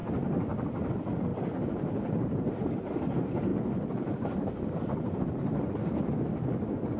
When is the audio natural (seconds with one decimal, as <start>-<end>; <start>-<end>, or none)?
0.9-1.3; 2.6-7.0

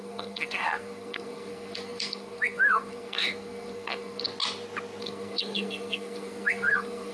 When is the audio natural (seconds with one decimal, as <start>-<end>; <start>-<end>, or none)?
4.3-5.0

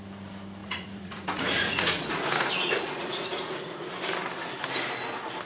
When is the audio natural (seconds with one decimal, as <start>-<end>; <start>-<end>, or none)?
0.0-0.6; 3.9-5.5

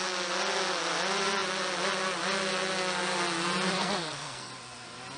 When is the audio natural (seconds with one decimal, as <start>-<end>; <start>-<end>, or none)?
0.0-3.8; 4.5-5.2

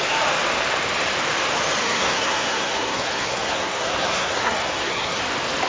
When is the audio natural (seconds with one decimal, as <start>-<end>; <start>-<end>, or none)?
0.0-1.8; 5.2-5.7

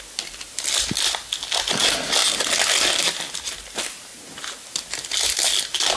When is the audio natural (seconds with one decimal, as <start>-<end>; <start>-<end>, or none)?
0.0-6.0

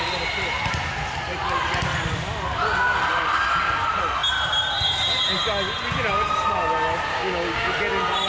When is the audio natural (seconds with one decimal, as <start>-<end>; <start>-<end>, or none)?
0.0-7.1; 7.7-8.3